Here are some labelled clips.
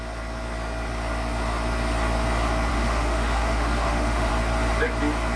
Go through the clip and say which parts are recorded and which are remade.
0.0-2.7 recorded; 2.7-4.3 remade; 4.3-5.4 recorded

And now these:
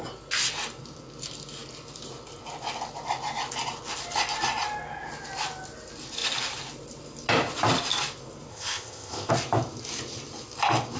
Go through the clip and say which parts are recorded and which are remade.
0.0-8.5 recorded; 8.5-9.3 remade; 9.3-11.0 recorded

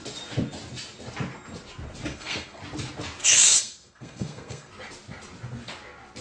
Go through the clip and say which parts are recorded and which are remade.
0.0-2.1 recorded; 2.1-2.6 remade; 2.6-3.2 recorded; 3.2-4.7 remade; 4.7-6.2 recorded

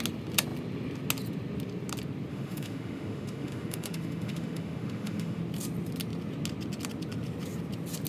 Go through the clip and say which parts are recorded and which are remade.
0.0-2.3 recorded; 2.3-5.4 remade; 5.4-8.1 recorded